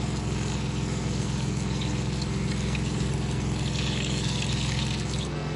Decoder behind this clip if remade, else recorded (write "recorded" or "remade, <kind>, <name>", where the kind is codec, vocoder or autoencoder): remade, codec, SNAC